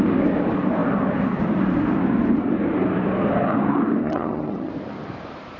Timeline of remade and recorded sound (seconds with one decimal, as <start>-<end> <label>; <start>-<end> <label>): 0.0-4.0 recorded; 4.0-4.7 remade; 4.7-5.6 recorded